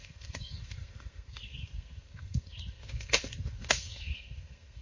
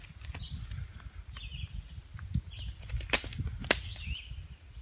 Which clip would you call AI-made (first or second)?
first